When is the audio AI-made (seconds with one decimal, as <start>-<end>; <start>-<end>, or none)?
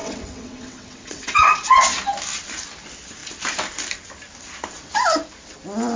0.0-1.8